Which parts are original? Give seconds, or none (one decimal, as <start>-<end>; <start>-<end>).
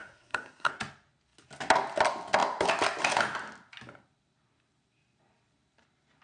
0.7-6.2